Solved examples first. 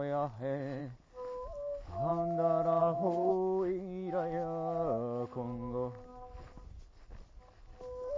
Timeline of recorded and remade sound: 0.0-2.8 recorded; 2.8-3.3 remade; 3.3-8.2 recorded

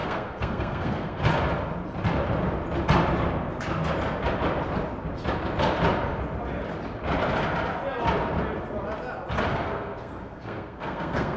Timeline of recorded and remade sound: 0.0-1.2 remade; 1.2-9.5 recorded; 9.5-11.4 remade